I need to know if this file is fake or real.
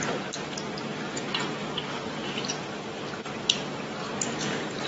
fake